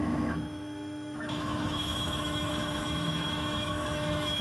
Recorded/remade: remade